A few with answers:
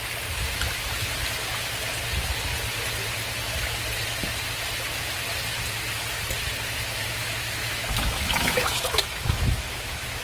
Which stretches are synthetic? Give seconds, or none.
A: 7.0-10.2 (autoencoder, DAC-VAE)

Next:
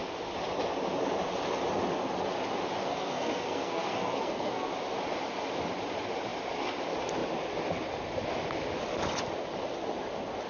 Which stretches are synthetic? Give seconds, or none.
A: 2.8-4.7 (codec, SNAC)

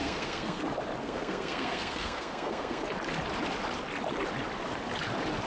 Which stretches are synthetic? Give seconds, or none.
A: 0.0-0.6 (codec, SNAC); 1.0-2.8

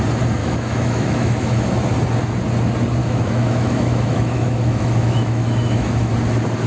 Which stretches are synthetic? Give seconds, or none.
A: 0.4-1.7 (autoencoder, DAC-VAE); 3.0-6.1

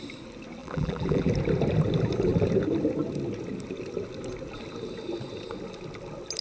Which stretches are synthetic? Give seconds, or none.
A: 0.6-1.3 (vocoder, BigVGAN v2)